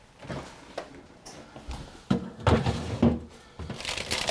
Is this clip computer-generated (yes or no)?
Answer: no